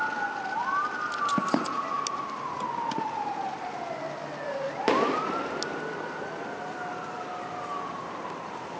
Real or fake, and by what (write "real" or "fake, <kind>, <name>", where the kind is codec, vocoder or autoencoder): real